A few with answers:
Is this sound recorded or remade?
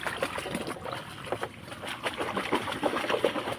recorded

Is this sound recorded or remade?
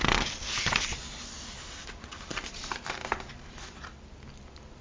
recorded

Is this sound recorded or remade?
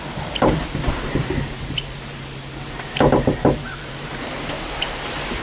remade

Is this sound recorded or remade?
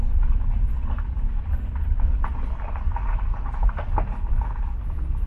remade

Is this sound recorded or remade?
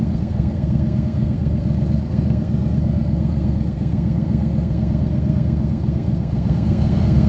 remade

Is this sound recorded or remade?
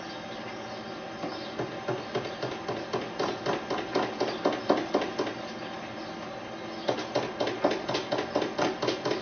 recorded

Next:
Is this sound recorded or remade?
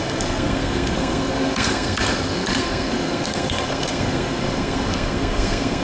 remade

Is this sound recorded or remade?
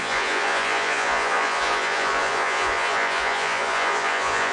remade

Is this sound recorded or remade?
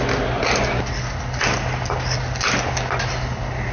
recorded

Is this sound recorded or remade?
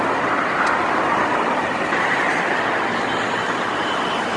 recorded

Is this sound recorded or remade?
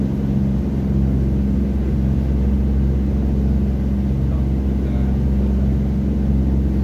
recorded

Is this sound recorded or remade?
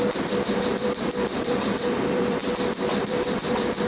remade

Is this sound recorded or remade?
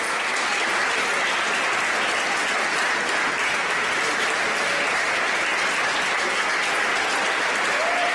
recorded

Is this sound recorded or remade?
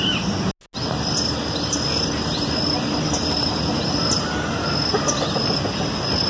recorded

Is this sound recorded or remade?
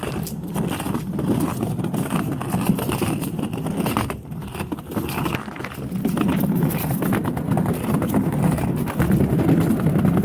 recorded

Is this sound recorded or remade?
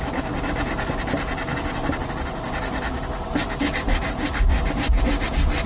recorded